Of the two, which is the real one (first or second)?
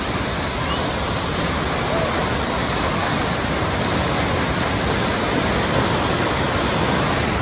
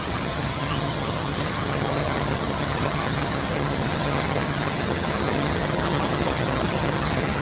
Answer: first